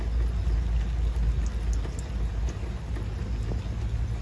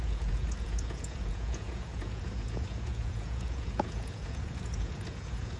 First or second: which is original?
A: first